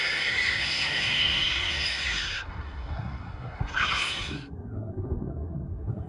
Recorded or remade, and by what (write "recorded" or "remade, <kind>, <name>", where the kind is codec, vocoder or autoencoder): remade, codec, SNAC